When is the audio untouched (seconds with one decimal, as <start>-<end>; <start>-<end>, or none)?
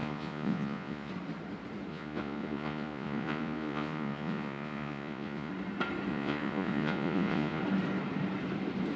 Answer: 1.1-1.9; 5.5-6.1; 7.6-9.0